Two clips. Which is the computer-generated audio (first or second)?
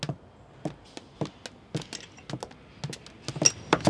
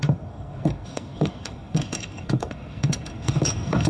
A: second